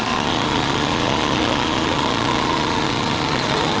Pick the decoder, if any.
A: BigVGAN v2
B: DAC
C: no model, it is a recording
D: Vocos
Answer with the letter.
D